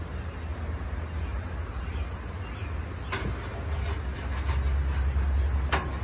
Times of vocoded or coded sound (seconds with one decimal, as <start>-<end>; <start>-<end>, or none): none